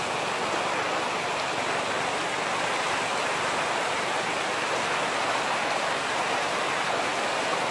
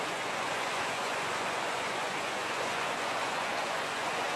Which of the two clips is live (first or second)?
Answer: first